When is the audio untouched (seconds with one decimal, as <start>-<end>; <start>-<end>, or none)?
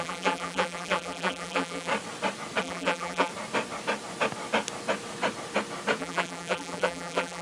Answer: 1.9-2.6; 3.3-6.0